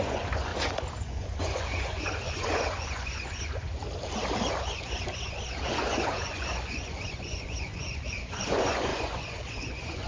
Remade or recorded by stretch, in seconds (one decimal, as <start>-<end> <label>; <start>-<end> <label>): 0.0-0.5 remade; 0.5-1.0 recorded; 1.0-3.8 remade; 3.8-4.6 recorded; 4.6-10.1 remade